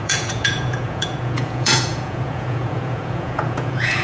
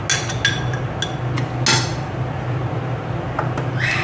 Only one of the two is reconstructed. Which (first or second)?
first